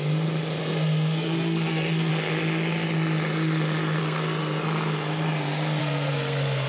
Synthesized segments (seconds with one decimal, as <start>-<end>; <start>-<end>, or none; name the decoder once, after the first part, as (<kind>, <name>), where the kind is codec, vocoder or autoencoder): 0.6-2.1 (codec, SNAC); 4.0-4.6; 5.8-6.7